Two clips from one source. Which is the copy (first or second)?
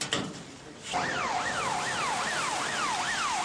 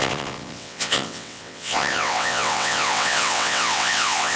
second